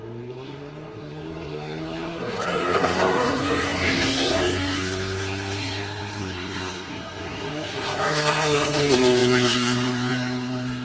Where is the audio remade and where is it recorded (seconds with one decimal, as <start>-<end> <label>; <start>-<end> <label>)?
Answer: 0.0-10.8 remade